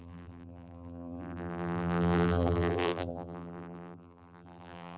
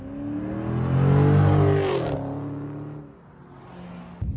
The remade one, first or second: first